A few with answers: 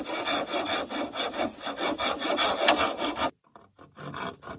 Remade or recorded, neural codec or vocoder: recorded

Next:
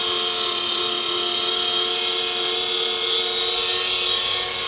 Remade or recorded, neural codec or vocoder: recorded